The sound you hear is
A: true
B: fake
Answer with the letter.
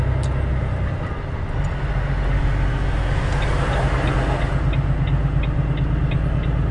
A